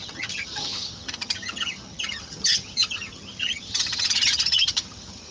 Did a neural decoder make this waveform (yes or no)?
yes